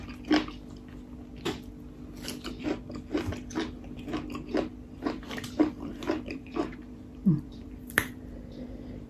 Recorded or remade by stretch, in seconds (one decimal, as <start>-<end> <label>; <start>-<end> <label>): 0.0-4.7 recorded; 4.7-9.1 remade